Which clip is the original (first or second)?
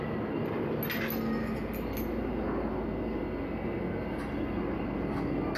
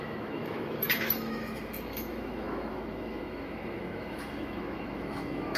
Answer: first